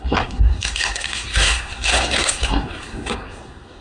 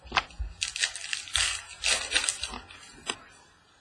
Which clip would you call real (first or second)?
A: second